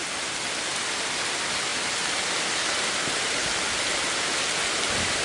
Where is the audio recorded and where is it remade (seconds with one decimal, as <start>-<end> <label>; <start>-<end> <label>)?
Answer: 0.0-5.2 recorded